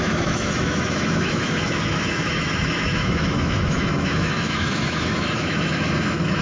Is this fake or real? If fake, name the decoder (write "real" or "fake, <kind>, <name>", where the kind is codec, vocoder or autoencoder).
fake, autoencoder, DAC-VAE